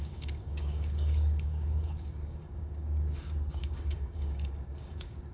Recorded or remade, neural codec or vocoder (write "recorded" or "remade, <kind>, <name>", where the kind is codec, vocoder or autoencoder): remade, codec, DAC